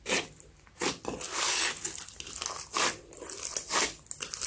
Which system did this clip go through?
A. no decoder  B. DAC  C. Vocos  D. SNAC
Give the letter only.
A